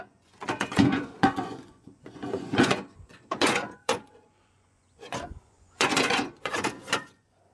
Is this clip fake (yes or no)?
yes